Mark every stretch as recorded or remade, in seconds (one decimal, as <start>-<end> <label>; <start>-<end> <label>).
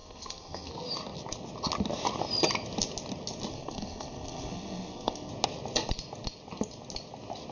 0.0-0.7 remade; 0.7-3.5 recorded; 3.5-5.3 remade; 5.3-7.5 recorded